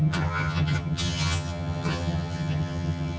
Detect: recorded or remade remade